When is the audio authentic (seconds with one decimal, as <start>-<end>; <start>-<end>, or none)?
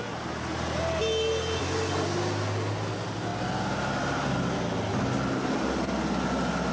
0.0-6.7